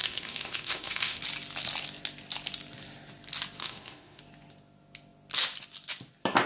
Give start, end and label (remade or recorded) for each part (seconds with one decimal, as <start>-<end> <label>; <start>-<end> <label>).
0.0-1.2 remade; 1.2-3.6 recorded; 3.6-4.2 remade; 4.2-6.5 recorded